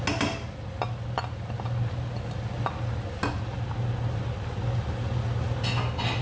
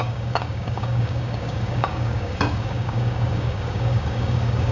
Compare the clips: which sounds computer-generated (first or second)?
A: second